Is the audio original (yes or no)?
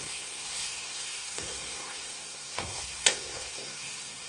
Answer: no